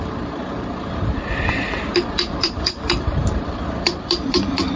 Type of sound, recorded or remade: remade